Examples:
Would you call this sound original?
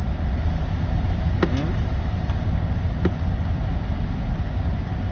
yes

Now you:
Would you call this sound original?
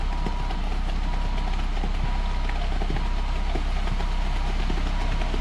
yes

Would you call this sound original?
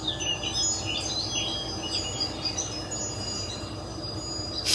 yes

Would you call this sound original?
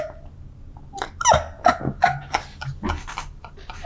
yes